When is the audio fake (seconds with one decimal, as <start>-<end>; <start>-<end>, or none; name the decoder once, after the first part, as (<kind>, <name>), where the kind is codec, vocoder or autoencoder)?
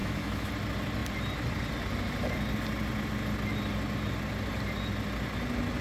0.0-0.5 (autoencoder, DAC-VAE)